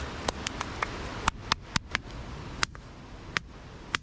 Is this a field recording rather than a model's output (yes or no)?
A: yes